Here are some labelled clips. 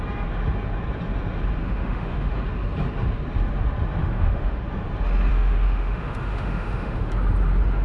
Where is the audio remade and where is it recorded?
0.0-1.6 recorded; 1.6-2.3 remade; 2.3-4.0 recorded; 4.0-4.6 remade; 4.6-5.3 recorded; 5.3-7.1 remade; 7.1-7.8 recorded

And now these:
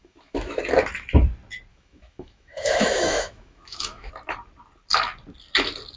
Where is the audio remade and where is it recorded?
0.0-0.6 remade; 0.6-1.7 recorded; 1.7-4.1 remade; 4.1-6.0 recorded

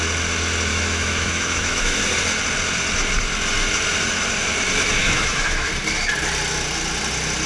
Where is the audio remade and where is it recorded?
0.0-0.7 recorded; 0.7-2.0 remade; 2.0-5.0 recorded; 5.0-5.7 remade; 5.7-7.5 recorded

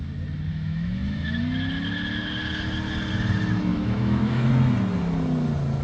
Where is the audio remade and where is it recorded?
0.0-0.5 recorded; 0.5-1.4 remade; 1.4-3.7 recorded; 3.7-4.5 remade; 4.5-5.8 recorded

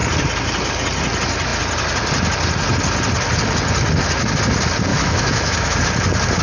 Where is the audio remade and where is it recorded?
0.0-4.9 recorded; 4.9-5.8 remade; 5.8-6.4 recorded

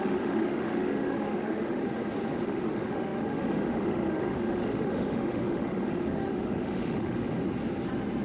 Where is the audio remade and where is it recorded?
0.0-1.8 remade; 1.8-2.4 recorded; 2.4-7.4 remade; 7.4-8.2 recorded